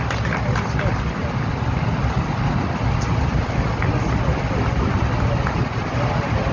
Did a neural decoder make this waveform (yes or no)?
no